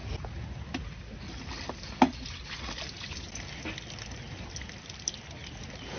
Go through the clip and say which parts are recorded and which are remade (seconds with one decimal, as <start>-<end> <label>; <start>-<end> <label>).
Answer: 0.0-6.0 recorded